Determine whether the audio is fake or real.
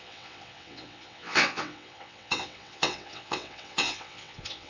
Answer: fake